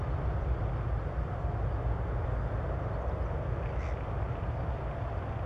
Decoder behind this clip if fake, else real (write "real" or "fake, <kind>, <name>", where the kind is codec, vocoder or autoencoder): real